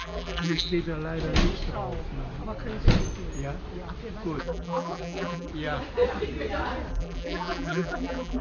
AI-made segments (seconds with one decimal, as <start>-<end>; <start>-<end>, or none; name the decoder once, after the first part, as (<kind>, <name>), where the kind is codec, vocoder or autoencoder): 0.0-0.7 (vocoder, BigVGAN v2); 4.4-5.5; 6.9-8.4